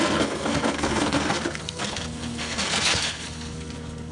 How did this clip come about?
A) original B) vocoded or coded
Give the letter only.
B